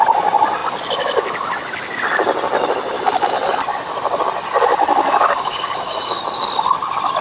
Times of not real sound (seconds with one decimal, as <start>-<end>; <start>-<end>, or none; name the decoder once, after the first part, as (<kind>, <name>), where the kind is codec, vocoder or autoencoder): 5.2-6.2 (codec, DAC)